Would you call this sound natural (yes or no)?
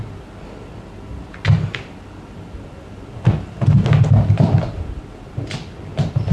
yes